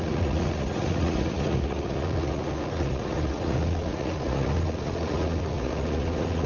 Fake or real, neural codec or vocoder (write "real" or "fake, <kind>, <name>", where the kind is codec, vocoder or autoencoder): fake, vocoder, Vocos